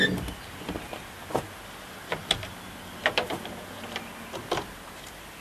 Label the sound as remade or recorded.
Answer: recorded